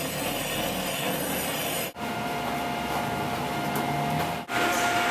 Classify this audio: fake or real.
real